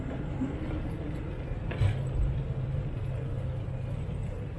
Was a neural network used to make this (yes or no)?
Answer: no